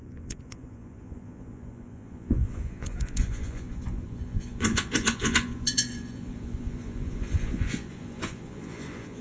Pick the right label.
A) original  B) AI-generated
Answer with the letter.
B